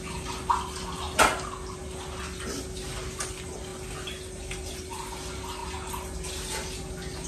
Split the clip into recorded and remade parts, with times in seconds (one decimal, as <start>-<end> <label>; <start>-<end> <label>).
0.0-7.3 recorded